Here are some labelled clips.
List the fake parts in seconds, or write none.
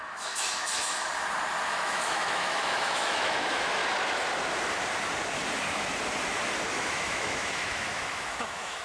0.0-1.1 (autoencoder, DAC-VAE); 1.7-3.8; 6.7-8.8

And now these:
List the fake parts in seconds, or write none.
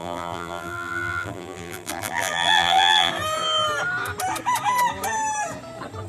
0.0-3.1 (vocoder, BigVGAN v2)